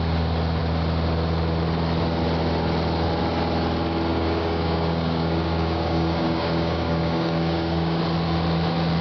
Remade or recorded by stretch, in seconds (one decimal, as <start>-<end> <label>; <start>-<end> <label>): 0.0-4.1 recorded; 4.1-8.0 remade; 8.0-9.0 recorded